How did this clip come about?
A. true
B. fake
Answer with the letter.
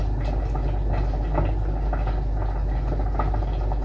A